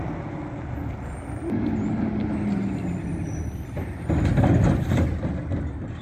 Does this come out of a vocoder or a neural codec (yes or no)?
no